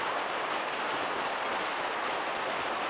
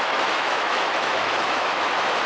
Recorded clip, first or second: first